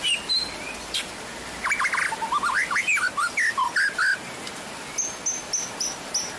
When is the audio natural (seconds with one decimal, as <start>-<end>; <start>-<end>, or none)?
0.0-6.4